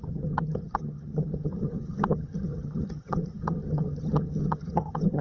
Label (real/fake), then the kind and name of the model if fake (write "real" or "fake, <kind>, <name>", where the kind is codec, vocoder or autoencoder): fake, vocoder, HiFi-GAN